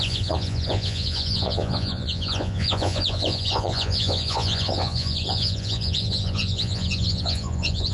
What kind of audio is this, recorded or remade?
remade